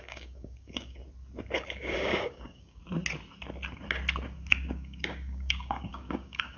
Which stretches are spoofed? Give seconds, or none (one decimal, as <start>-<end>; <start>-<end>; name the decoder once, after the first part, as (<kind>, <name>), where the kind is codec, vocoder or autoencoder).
0.0-1.0 (codec, DAC); 1.5-2.8; 4.5-6.6